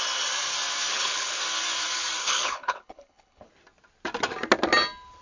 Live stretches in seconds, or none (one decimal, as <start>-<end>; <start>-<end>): 0.0-0.9; 1.4-2.2; 3.5-5.2